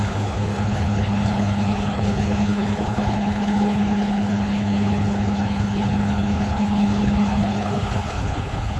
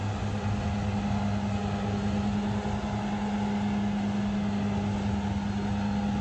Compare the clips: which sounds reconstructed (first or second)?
first